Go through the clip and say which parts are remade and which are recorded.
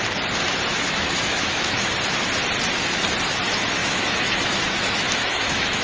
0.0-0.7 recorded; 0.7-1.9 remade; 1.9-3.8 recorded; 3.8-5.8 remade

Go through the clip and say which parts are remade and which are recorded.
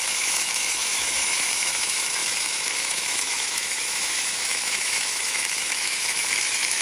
0.0-6.8 remade